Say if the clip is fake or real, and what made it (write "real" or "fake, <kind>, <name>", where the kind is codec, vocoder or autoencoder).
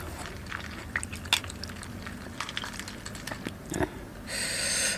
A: real